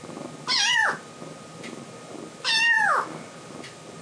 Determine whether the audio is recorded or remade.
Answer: recorded